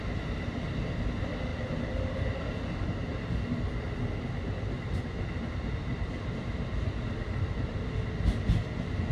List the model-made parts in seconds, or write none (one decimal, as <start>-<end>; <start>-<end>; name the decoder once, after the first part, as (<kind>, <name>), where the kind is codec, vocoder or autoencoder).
none